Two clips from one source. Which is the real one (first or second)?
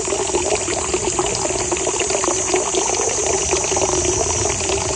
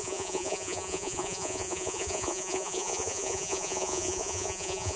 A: first